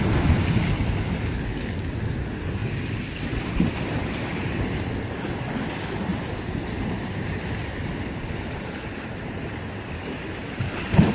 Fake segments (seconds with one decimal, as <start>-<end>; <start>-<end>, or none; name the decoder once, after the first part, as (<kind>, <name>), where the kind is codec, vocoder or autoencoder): 6.1-7.8 (vocoder, BigVGAN v2); 10.4-11.1